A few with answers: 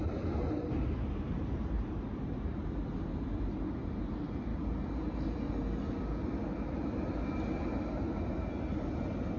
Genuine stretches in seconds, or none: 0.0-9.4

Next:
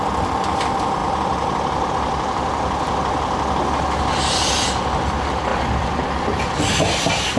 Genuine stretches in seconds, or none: 0.0-7.4

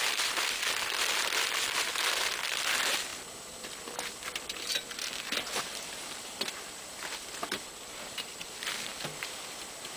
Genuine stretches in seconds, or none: 3.1-4.1

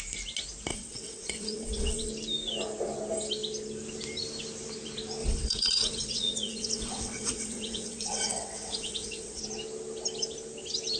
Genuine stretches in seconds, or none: 0.0-0.7; 2.1-5.2; 9.4-11.0

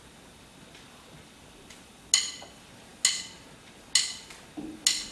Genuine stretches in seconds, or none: 0.0-5.1

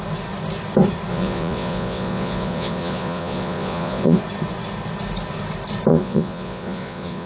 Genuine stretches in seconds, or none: 0.0-1.1; 4.2-5.9

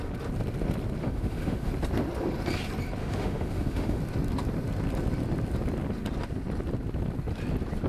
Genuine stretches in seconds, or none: 0.0-1.0; 1.7-3.0; 4.0-7.9

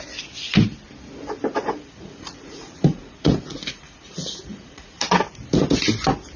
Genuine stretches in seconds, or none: 0.0-1.6; 5.2-6.4